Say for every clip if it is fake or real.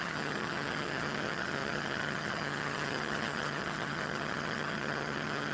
fake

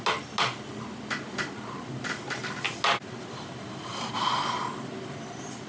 real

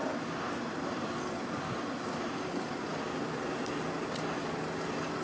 real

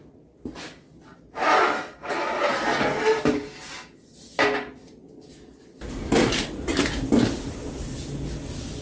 real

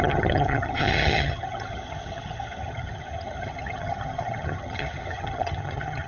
fake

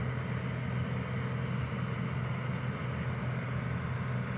real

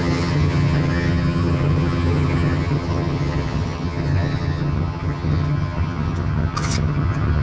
fake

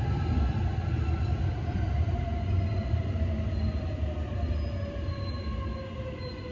real